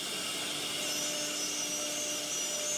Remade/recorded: recorded